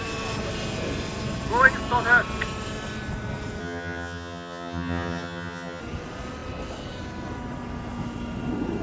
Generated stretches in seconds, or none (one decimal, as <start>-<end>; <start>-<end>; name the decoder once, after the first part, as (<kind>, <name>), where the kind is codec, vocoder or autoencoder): 3.6-5.8 (vocoder, HiFi-GAN)

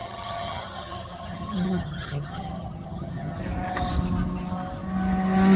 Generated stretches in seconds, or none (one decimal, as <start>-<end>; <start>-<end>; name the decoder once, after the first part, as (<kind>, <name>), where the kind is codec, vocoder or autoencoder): 0.0-3.4 (vocoder, HiFi-GAN)

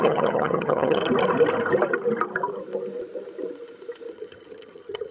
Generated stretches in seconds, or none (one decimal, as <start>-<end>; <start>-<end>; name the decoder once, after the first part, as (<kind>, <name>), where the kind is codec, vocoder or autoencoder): 0.0-1.0 (vocoder, HiFi-GAN); 4.1-5.1

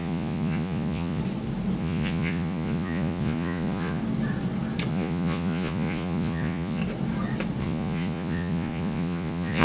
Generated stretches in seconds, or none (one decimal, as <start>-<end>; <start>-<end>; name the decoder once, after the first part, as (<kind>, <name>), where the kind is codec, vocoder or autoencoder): 0.0-1.2 (vocoder, Vocos); 1.8-4.0; 4.9-6.8; 7.6-9.6

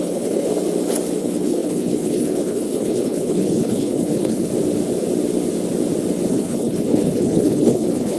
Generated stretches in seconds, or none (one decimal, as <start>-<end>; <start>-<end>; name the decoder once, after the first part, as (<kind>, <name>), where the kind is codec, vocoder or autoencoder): 0.0-0.5 (codec, HILCodec); 1.2-4.5; 6.3-8.2